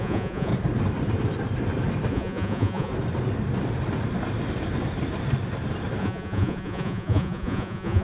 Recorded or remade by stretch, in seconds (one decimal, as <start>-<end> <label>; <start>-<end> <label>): 0.0-0.5 remade; 0.5-2.1 recorded; 2.1-2.9 remade; 2.9-6.0 recorded; 6.0-8.0 remade